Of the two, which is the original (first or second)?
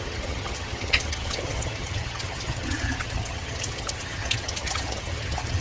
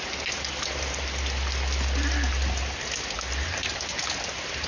second